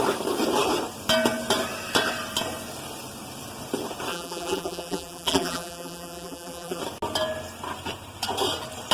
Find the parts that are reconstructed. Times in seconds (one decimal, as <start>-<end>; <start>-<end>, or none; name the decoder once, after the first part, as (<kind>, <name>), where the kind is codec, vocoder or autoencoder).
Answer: 4.1-6.8 (vocoder, BigVGAN v2)